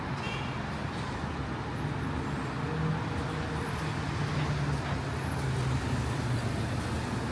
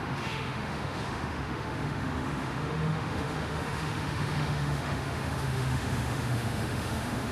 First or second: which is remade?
second